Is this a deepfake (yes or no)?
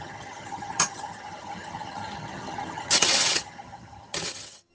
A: yes